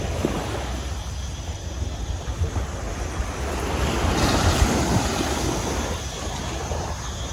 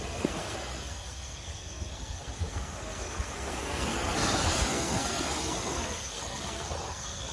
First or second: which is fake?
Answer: second